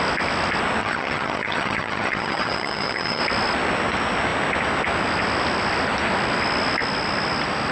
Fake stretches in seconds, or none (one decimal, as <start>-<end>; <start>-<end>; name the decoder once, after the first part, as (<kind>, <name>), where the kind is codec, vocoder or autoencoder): 0.8-3.2 (vocoder, HiFi-GAN)